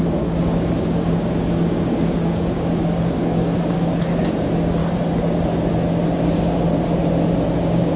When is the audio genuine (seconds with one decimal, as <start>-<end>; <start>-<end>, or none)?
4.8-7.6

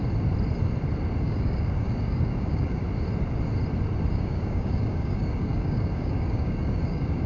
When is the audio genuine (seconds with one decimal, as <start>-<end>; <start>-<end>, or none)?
0.0-1.2; 2.8-4.1

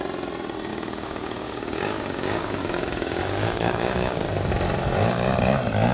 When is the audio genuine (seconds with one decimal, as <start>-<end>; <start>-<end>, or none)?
0.0-0.7; 4.2-5.9

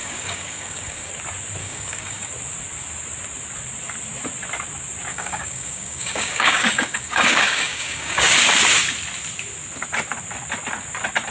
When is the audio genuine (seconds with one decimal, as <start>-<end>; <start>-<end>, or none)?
1.1-1.6; 2.3-5.1; 8.3-11.3

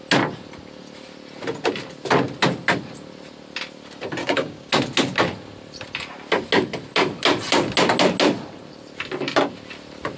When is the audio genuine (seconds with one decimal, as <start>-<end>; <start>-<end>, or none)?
0.0-4.2; 4.7-10.2

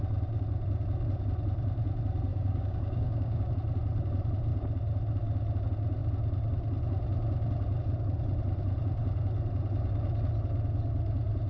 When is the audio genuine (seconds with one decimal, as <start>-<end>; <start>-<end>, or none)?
0.0-2.3; 3.5-11.5